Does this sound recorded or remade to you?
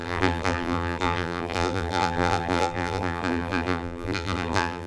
remade